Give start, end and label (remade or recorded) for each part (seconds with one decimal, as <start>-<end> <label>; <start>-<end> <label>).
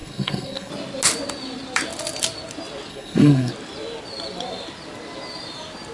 0.0-0.7 remade; 0.7-2.9 recorded; 2.9-3.5 remade; 3.5-5.9 recorded